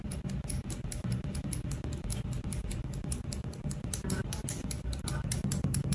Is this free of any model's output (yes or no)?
yes